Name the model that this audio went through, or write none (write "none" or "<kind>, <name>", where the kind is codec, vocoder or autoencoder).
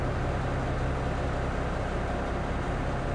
none